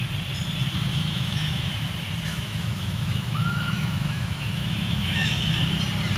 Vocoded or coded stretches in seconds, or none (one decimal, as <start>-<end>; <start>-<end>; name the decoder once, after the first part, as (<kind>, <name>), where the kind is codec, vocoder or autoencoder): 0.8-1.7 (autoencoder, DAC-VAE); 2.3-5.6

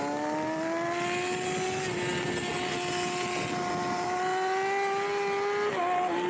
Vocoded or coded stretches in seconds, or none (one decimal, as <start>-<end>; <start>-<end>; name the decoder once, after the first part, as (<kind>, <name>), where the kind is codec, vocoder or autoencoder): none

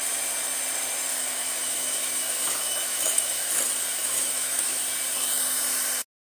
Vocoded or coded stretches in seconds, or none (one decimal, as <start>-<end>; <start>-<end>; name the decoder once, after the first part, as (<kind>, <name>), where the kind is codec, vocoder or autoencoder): 1.1-3.5 (autoencoder, DAC-VAE); 4.0-4.8

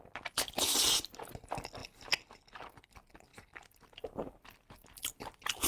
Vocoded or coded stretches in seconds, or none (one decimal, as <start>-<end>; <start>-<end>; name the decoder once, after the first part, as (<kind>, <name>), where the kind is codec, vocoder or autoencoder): none

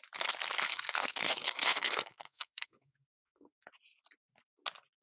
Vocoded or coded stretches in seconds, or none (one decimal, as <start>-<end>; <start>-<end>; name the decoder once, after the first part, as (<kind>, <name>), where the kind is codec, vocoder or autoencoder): 0.7-3.7 (codec, SNAC)

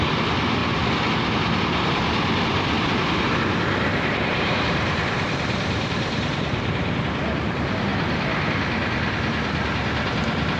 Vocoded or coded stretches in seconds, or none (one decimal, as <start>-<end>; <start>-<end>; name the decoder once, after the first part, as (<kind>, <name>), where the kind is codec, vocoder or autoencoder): 3.9-7.0 (vocoder, BigVGAN v2)

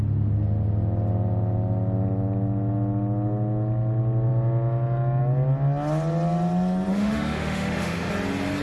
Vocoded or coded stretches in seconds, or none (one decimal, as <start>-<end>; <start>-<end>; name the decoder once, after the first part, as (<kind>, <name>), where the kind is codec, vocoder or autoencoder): 6.9-8.1 (autoencoder, DAC-VAE)

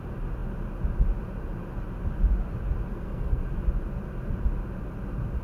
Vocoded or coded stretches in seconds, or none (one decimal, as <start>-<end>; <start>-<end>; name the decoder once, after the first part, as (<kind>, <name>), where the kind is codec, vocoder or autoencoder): 2.9-3.4 (codec, SNAC)